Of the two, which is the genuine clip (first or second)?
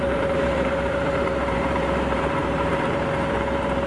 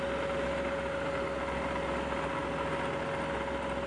second